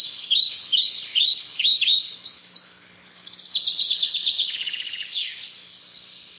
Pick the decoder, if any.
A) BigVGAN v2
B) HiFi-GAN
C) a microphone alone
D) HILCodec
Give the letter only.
D